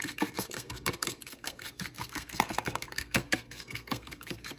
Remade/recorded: remade